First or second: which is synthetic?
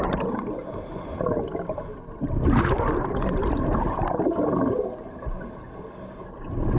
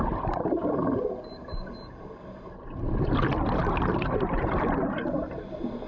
second